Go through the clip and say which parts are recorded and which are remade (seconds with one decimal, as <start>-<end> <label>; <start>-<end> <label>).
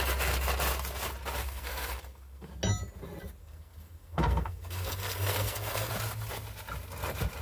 0.0-1.4 recorded; 1.4-2.5 remade; 2.5-3.4 recorded; 3.4-5.9 remade; 5.9-7.4 recorded